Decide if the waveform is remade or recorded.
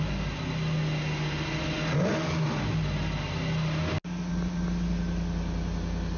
recorded